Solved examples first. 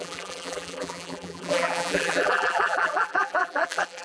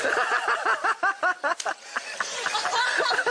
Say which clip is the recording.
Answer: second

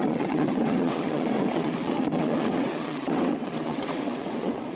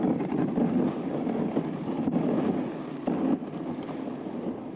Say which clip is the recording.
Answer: second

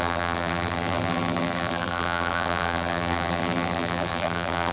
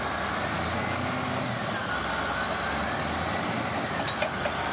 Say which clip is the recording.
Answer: second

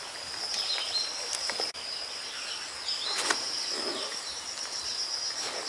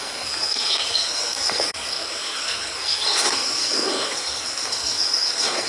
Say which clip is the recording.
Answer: first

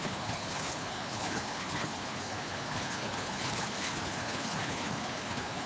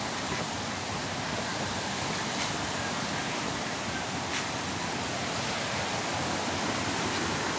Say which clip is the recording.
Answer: second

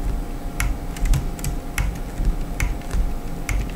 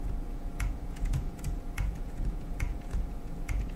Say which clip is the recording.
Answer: first